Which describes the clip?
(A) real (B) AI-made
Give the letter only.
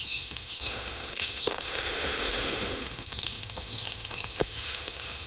B